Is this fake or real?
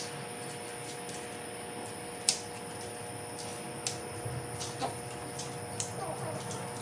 real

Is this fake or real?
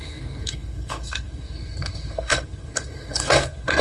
fake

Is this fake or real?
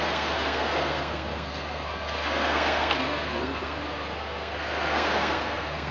fake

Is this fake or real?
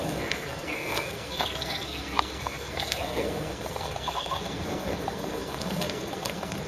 fake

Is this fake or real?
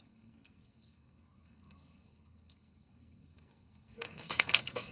fake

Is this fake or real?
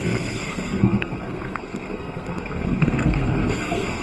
fake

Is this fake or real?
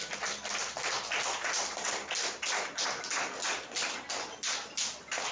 real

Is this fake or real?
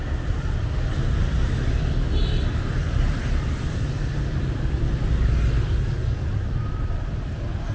real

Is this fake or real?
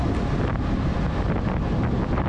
real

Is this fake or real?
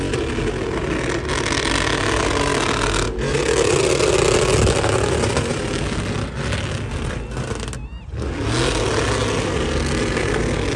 real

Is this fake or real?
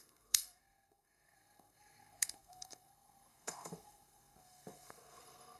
fake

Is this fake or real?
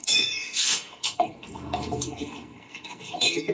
fake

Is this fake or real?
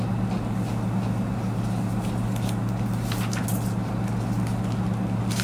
real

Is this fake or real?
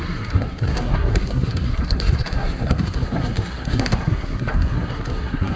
fake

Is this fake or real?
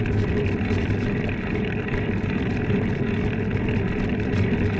real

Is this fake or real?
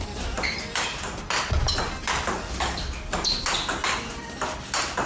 real